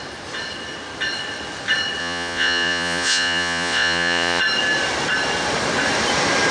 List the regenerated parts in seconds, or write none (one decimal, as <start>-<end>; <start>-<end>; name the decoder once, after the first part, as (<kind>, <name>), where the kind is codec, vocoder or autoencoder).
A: 2.0-4.4 (vocoder, Vocos)